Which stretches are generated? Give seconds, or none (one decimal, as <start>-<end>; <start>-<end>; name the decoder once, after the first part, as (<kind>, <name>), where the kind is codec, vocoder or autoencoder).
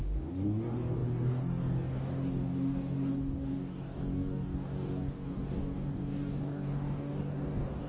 0.0-7.9 (codec, DAC)